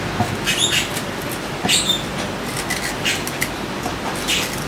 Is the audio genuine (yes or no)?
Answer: yes